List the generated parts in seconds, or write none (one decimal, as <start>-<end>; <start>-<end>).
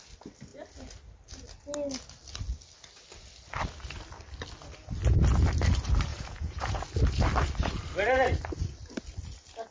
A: 6.1-6.8